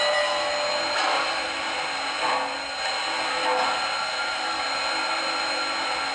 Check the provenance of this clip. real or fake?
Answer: real